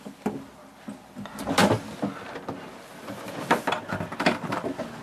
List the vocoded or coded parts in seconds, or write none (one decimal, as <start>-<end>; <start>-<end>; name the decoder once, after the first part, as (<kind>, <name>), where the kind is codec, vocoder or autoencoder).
none